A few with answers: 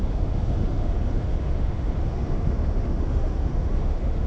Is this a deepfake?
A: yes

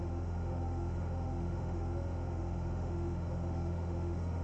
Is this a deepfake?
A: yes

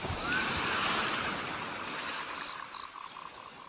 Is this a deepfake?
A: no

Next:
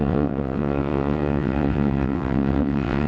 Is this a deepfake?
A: yes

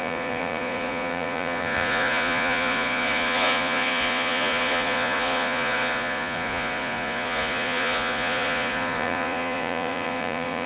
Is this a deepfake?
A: yes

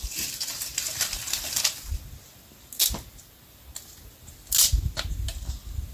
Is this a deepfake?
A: no